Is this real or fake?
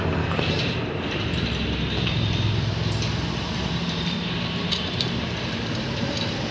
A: fake